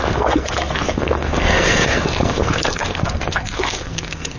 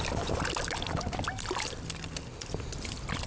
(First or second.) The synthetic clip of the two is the first